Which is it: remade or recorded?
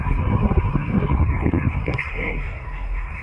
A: remade